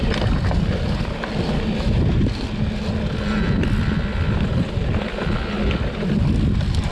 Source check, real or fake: real